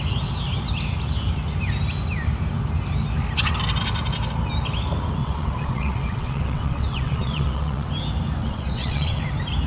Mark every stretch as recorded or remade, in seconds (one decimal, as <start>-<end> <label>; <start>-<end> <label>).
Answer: 0.0-5.2 recorded; 5.2-7.9 remade; 7.9-8.4 recorded; 8.4-9.2 remade; 9.2-9.7 recorded